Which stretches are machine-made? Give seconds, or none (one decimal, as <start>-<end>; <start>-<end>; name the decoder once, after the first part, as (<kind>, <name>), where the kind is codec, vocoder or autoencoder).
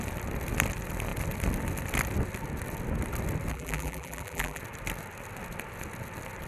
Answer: 3.5-4.6 (vocoder, BigVGAN v2)